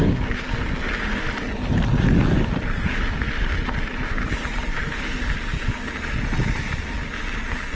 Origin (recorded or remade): recorded